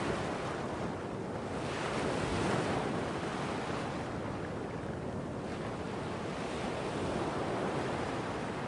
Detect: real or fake real